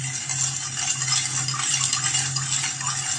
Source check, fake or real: real